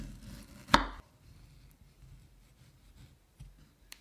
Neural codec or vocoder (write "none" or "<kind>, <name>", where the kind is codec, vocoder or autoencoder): none